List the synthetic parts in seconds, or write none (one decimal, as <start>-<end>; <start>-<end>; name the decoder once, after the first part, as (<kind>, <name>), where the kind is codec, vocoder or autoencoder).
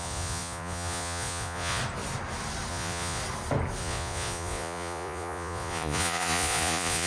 0.0-1.8 (vocoder, Vocos); 2.7-3.2; 3.8-7.1